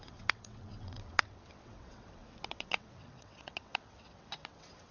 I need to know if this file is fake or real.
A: fake